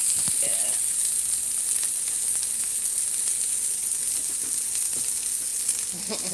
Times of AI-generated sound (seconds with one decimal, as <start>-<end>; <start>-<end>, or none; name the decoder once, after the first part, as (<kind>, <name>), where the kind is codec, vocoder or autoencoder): none